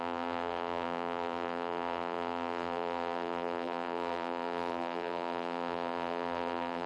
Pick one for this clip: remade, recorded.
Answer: remade